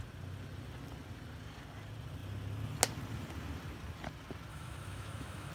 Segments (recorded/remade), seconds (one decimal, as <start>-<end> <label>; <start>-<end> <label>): 0.0-4.5 recorded; 4.5-5.5 remade